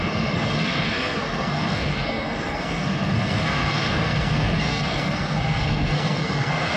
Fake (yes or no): yes